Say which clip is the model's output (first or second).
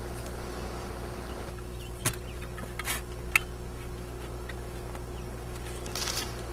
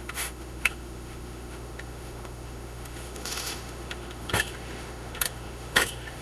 second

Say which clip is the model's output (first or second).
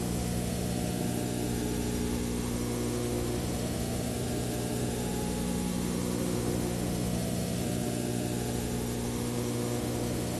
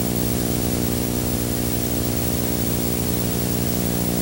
first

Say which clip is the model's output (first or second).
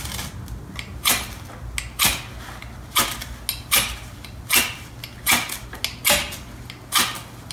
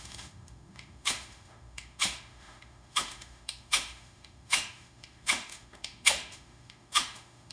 second